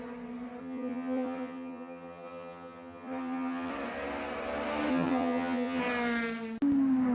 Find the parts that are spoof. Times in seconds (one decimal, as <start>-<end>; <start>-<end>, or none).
0.6-3.7; 4.9-5.8